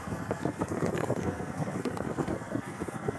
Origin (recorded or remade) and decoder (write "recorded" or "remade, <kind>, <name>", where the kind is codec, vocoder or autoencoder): remade, codec, SNAC